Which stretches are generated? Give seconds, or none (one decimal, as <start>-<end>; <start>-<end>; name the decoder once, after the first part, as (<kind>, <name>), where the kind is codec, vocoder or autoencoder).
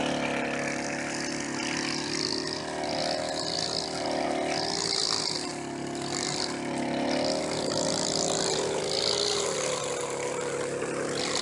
none